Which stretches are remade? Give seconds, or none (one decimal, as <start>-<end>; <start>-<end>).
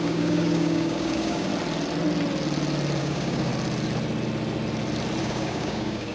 0.0-1.5; 3.0-3.5; 5.2-6.1